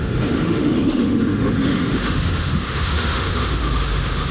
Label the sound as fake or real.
fake